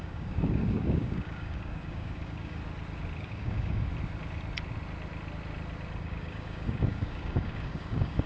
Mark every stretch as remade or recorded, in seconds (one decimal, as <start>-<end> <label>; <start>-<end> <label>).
0.0-2.6 remade; 2.6-3.2 recorded; 3.2-3.9 remade; 3.9-6.0 recorded; 6.0-8.3 remade